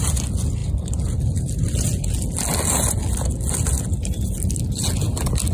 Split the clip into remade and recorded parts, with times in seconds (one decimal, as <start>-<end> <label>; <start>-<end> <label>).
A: 0.0-5.5 recorded